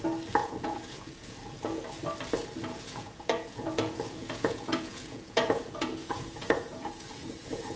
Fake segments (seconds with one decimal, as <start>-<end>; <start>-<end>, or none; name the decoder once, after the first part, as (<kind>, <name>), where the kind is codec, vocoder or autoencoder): 0.4-1.9 (vocoder, Vocos); 2.7-7.8